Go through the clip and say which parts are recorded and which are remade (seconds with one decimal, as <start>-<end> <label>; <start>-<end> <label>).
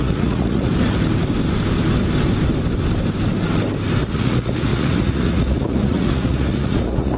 0.0-0.7 remade; 0.7-4.0 recorded; 4.0-7.2 remade